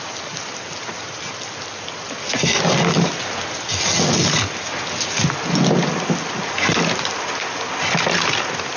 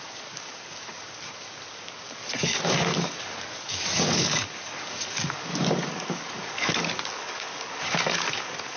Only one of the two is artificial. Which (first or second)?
second